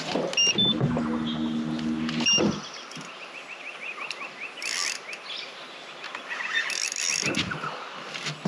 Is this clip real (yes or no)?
yes